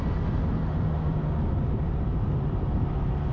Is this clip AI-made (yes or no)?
no